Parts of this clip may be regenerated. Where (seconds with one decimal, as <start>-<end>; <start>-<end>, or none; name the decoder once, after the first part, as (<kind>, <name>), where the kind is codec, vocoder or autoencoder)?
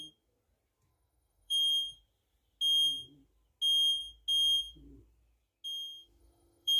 0.9-1.9 (autoencoder, DAC-VAE); 6.2-6.8